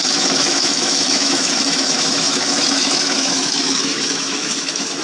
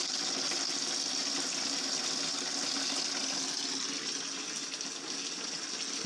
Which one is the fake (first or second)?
first